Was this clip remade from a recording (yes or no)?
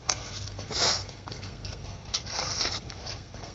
yes